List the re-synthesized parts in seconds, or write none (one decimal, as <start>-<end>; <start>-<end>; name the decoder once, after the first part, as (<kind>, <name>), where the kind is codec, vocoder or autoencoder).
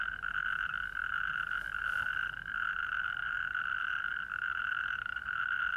1.0-1.8 (vocoder, BigVGAN v2)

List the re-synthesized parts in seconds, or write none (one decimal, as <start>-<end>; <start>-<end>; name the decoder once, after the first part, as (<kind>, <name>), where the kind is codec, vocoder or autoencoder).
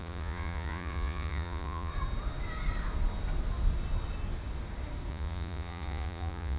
0.0-1.9 (vocoder, Vocos); 5.1-6.6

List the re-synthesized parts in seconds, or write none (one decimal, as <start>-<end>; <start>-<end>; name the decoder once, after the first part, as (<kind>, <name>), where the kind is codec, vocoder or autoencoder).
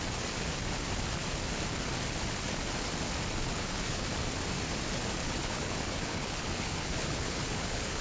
3.5-4.1 (codec, HILCodec); 5.2-8.0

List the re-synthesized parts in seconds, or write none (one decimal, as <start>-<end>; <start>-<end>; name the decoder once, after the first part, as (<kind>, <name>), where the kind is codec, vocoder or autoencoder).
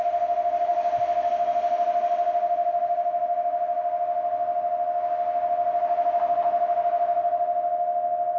none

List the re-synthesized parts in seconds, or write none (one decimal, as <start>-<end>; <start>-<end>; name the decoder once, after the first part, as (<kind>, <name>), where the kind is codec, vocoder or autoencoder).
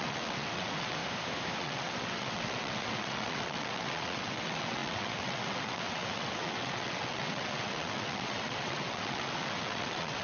0.0-1.0 (vocoder, WaveNeXt); 1.6-10.2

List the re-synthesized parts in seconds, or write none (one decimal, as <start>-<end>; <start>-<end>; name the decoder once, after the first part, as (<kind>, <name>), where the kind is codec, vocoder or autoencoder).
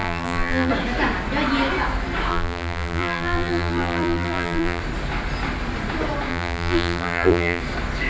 0.0-0.7 (vocoder, BigVGAN v2); 2.3-4.8; 6.3-7.6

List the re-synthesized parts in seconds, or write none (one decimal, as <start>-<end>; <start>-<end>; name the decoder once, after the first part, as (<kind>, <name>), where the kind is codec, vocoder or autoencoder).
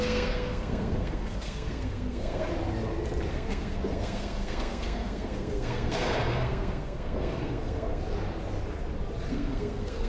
0.0-2.5 (codec, SNAC); 3.3-8.0; 9.3-10.1